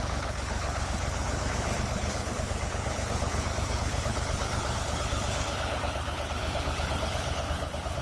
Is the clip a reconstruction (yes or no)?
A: yes